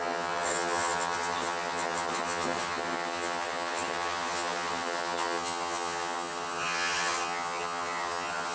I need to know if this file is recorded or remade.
remade